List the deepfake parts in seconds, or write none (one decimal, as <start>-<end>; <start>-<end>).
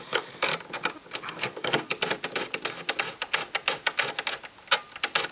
0.0-0.5; 1.3-1.9